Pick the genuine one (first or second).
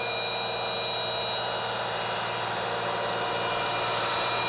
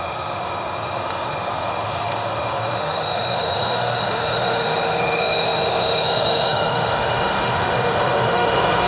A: first